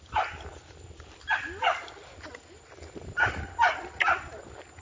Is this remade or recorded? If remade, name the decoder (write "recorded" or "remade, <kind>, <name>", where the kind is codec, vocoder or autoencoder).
recorded